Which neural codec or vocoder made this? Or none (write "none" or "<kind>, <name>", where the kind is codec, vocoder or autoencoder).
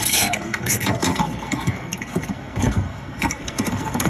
codec, SNAC